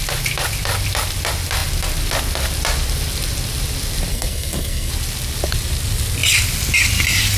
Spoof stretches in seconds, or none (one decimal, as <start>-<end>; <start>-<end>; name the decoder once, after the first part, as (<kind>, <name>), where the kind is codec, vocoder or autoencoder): 4.1-4.9 (codec, SNAC)